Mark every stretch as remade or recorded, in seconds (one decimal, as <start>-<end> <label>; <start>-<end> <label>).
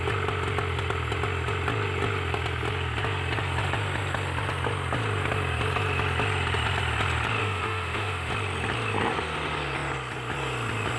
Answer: 0.0-7.4 recorded; 7.4-8.3 remade; 8.3-11.0 recorded